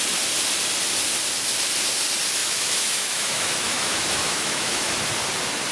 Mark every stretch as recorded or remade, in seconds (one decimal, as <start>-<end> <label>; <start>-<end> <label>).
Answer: 0.0-2.4 recorded; 2.4-4.9 remade; 4.9-5.7 recorded